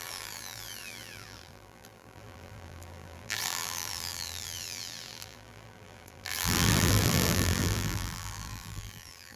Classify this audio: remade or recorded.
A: remade